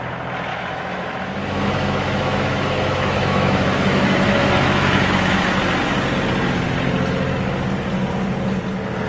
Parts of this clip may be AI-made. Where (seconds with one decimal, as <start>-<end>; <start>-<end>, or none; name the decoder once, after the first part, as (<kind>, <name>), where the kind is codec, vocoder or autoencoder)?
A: 0.5-5.4 (autoencoder, DAC-VAE)